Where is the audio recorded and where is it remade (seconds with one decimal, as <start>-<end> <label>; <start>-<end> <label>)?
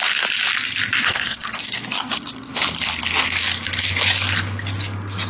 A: 0.0-1.0 recorded; 1.0-2.1 remade; 2.1-5.3 recorded